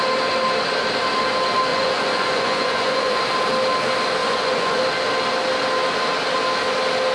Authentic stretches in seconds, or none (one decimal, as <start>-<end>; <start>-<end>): 0.0-1.7; 3.2-4.2; 4.8-7.1